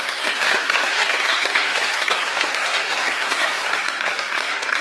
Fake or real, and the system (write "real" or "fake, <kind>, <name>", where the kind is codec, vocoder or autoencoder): fake, codec, SNAC